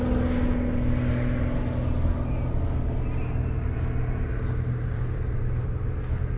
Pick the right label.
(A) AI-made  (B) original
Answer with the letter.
B